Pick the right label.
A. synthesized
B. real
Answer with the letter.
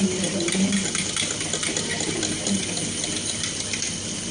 B